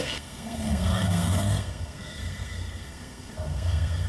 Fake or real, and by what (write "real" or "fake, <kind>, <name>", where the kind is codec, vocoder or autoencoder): fake, codec, SNAC